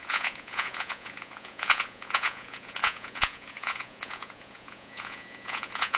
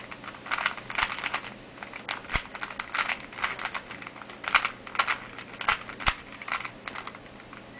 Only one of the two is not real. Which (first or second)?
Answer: first